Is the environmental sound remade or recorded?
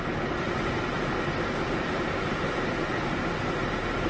recorded